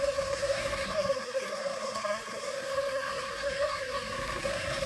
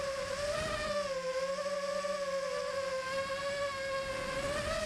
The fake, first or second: first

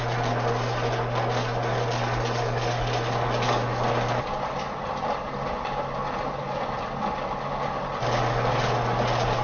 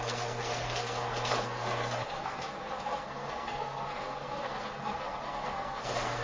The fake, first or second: second